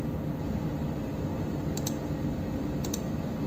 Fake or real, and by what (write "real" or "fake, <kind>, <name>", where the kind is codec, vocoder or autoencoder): real